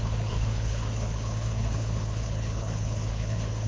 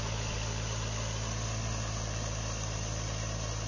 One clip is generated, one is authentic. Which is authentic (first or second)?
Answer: second